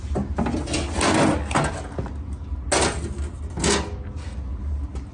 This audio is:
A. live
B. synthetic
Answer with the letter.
A